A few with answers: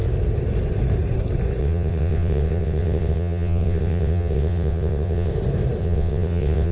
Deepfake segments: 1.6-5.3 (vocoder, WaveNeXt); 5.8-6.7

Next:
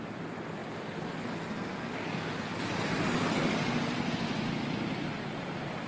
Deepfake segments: none

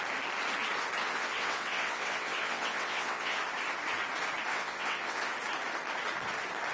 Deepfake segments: 1.0-3.4 (vocoder, WaveNeXt); 4.5-5.3

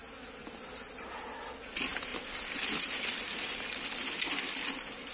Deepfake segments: none

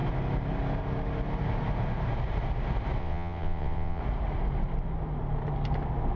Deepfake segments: 3.0-4.0 (vocoder, WaveNeXt)

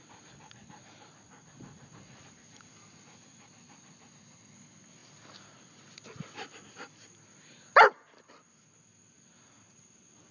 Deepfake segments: none

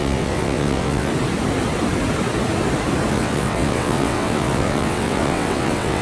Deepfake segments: 0.0-1.1 (vocoder, WaveNeXt); 3.1-6.0